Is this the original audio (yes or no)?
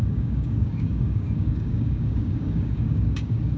no